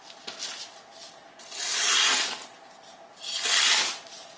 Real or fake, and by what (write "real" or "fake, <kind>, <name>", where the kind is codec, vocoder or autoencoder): real